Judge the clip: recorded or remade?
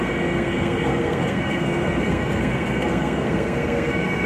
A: remade